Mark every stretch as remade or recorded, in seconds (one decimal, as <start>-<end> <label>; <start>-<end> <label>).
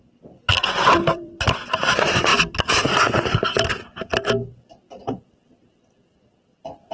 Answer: 0.0-2.3 remade; 2.3-5.5 recorded; 5.5-6.9 remade